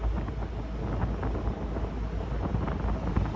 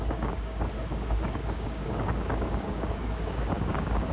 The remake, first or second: second